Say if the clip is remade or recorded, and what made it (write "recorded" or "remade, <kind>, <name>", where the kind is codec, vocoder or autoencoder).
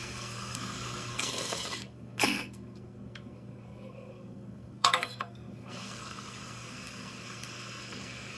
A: remade, codec, SNAC